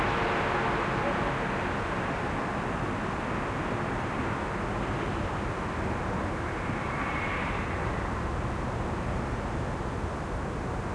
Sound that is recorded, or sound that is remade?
recorded